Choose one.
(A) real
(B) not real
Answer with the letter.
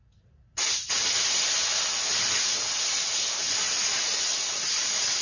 A